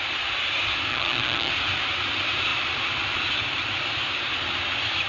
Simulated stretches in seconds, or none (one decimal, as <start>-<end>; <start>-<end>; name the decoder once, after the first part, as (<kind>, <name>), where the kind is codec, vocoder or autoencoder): 0.9-1.5 (vocoder, HiFi-GAN)